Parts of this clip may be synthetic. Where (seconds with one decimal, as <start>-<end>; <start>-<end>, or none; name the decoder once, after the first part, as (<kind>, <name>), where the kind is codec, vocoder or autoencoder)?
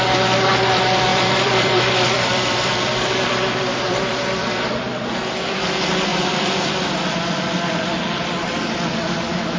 1.1-5.0 (vocoder, BigVGAN v2); 6.1-7.8